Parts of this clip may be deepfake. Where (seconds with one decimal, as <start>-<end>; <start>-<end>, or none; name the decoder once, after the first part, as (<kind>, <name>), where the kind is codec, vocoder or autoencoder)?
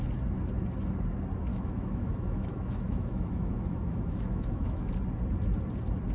1.5-4.9 (autoencoder, DAC-VAE)